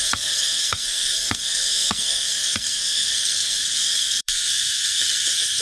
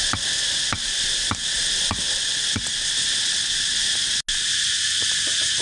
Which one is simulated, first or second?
first